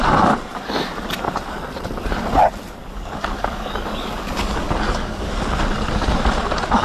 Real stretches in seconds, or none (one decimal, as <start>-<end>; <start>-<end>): 0.0-2.8; 5.3-6.8